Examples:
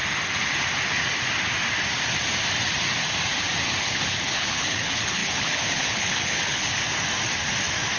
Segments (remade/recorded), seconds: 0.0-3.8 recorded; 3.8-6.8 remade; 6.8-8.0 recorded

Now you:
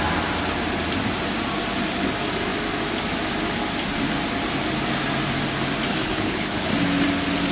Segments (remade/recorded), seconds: 0.0-5.9 recorded; 5.9-6.7 remade; 6.7-7.5 recorded

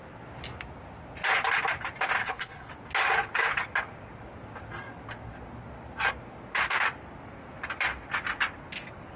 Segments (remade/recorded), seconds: 0.0-2.2 recorded; 2.2-2.7 remade; 2.7-9.2 recorded